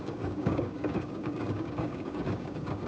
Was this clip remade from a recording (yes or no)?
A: yes